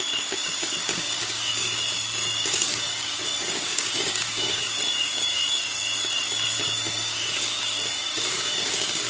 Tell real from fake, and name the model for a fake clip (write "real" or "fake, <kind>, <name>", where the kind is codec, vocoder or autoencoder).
fake, codec, DAC